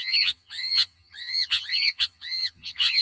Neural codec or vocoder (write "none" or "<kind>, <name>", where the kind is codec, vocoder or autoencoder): vocoder, HiFi-GAN